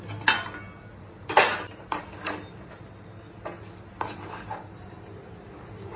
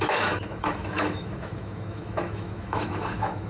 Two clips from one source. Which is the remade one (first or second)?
second